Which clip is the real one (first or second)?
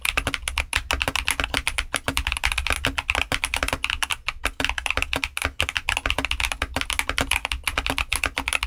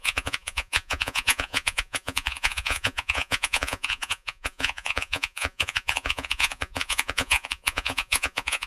first